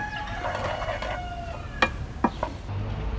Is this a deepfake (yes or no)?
no